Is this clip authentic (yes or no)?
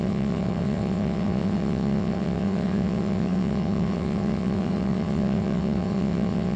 no